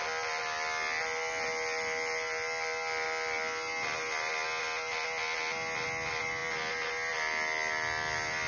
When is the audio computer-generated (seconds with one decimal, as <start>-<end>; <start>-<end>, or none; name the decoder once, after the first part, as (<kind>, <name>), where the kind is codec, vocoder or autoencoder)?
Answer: none